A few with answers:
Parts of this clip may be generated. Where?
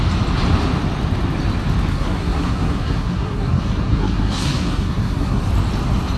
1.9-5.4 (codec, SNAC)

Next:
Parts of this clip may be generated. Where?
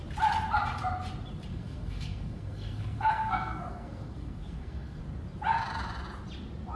1.5-5.0 (codec, SNAC)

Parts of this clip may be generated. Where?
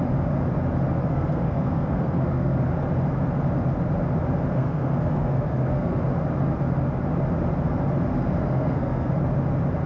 1.0-2.6 (codec, SNAC); 4.5-6.0; 8.1-9.1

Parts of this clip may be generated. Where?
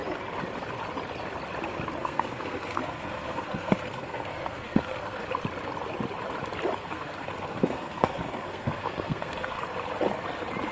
2.0-5.2 (codec, SNAC); 6.8-9.6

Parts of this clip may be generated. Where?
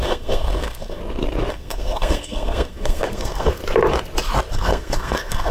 0.0-1.0 (codec, SNAC); 1.5-3.6; 4.5-5.5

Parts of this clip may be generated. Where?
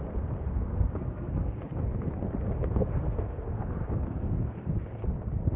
0.5-1.6 (codec, SNAC); 2.6-4.7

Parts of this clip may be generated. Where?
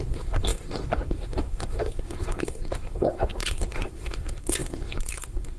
0.0-5.6 (codec, SNAC)